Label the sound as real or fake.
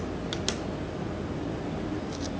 real